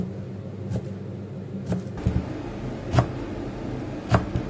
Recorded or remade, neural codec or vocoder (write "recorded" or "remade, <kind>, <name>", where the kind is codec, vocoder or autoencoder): recorded